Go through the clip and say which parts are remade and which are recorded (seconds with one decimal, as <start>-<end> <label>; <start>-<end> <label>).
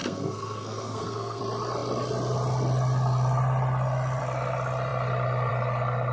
0.0-1.4 remade; 1.4-6.1 recorded